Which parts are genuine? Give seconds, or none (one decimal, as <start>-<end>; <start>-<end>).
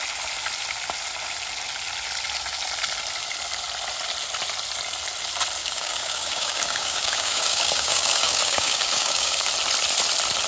0.0-5.6; 9.5-10.5